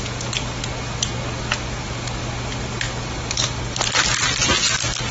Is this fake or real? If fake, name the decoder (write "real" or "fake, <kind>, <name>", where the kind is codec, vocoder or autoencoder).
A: real